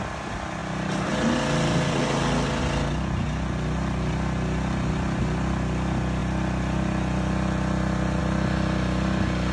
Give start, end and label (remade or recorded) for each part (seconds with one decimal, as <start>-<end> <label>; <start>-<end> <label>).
0.0-9.5 recorded